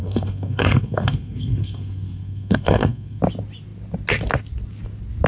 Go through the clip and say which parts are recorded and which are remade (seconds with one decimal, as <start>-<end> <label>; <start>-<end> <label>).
0.0-3.2 remade; 3.2-5.3 recorded